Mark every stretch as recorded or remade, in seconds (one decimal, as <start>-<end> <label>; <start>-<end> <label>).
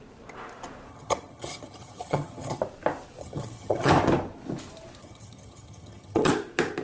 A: 0.0-0.9 recorded; 0.9-2.6 remade; 2.6-3.2 recorded; 3.2-3.9 remade; 3.9-5.0 recorded; 5.0-6.3 remade; 6.3-6.8 recorded